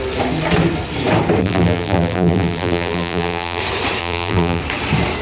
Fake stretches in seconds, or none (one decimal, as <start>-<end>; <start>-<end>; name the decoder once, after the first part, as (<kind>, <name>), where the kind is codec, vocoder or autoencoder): 1.4-3.6 (vocoder, BigVGAN v2); 4.0-4.6